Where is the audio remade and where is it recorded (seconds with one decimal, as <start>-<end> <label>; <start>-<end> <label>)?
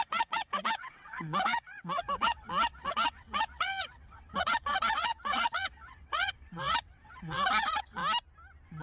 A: 0.0-8.0 remade; 8.0-8.8 recorded